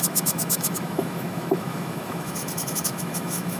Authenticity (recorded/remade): remade